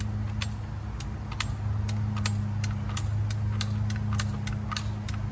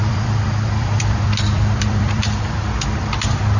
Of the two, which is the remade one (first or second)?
second